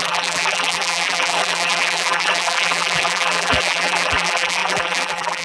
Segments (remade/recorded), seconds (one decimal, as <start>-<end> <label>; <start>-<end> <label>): 0.0-5.4 remade